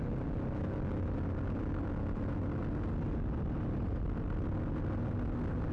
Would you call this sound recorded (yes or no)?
yes